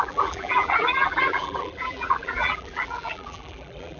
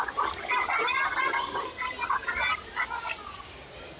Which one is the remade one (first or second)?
first